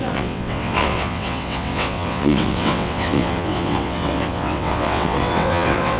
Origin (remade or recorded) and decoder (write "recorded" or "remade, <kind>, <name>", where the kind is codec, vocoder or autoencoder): remade, vocoder, WaveNeXt